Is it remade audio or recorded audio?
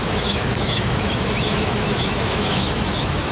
remade